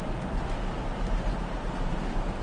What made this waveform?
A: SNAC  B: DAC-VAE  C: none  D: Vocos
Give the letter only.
C